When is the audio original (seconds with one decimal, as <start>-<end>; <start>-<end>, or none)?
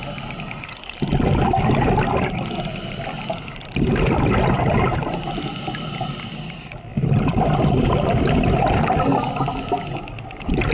0.0-6.9; 9.9-10.7